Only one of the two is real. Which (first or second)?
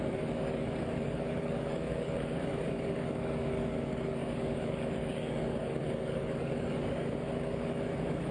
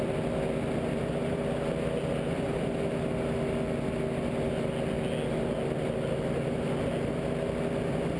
second